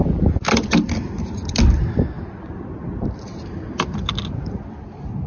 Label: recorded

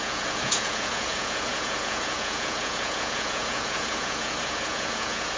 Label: remade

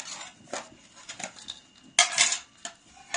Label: recorded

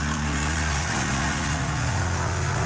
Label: remade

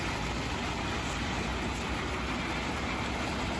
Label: recorded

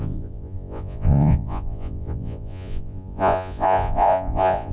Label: remade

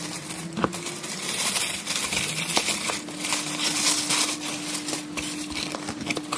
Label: recorded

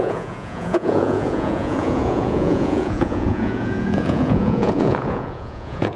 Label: remade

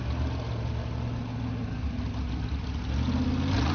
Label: recorded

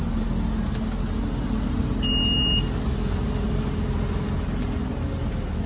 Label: recorded